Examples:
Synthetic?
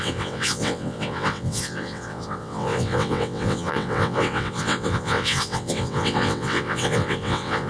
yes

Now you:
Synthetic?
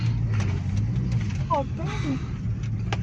no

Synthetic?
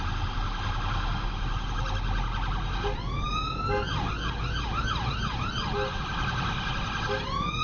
no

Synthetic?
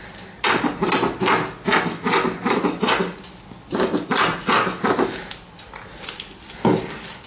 no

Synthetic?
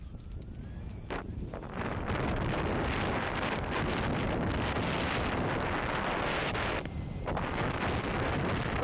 no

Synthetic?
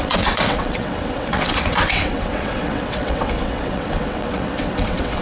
yes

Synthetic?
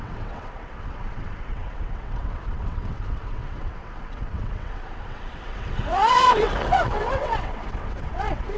yes